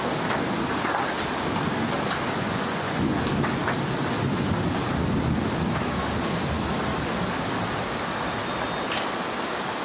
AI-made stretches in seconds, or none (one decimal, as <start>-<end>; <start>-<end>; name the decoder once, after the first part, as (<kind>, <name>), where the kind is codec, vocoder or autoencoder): 2.4-3.2 (vocoder, Vocos)